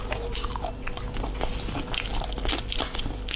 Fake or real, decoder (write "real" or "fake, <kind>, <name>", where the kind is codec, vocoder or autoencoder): real